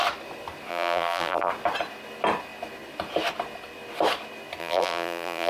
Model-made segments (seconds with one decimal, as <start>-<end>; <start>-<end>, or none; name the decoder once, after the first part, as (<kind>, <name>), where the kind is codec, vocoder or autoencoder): 0.7-1.5 (vocoder, BigVGAN v2); 4.6-5.5